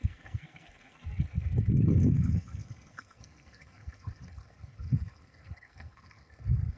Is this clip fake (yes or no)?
yes